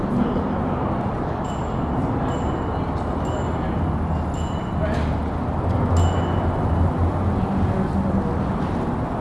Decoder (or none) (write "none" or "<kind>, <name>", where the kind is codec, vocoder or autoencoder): none